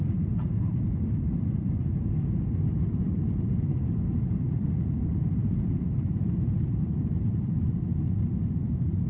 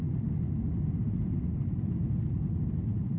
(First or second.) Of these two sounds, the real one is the second